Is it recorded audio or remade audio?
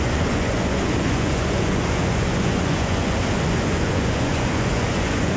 remade